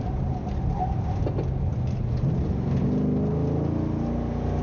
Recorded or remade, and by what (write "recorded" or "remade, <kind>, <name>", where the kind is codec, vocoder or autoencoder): recorded